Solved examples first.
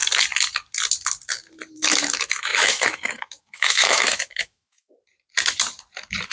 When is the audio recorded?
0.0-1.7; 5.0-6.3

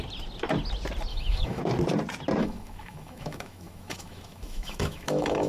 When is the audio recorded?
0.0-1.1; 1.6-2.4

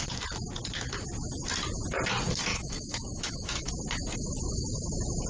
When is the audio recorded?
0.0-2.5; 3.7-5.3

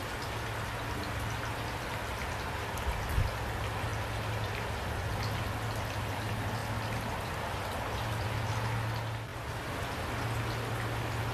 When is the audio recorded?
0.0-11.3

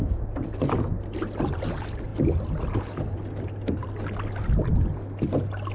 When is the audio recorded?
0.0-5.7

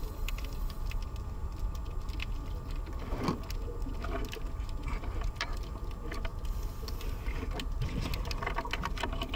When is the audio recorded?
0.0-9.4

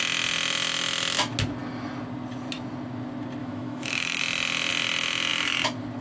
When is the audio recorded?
0.0-3.4; 4.2-6.0

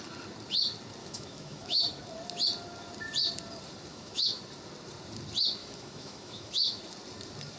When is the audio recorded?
0.0-1.0; 2.0-3.9; 4.4-5.6; 6.8-7.6